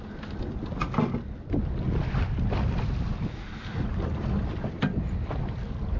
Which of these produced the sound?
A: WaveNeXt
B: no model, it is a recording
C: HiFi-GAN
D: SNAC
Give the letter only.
B